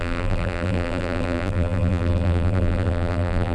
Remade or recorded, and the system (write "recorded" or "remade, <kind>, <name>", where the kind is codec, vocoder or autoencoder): remade, vocoder, BigVGAN v2